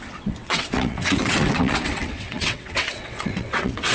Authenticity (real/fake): fake